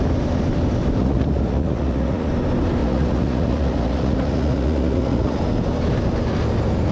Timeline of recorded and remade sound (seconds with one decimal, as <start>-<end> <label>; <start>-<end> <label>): 0.0-1.0 recorded; 1.0-2.3 remade; 2.3-2.8 recorded; 2.8-5.4 remade; 5.4-6.9 recorded